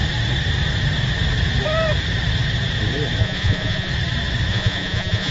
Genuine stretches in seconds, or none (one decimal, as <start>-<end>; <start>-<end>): 0.0-3.2; 3.9-4.5